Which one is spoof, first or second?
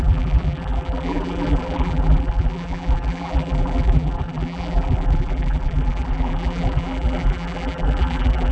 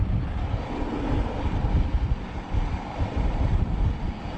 first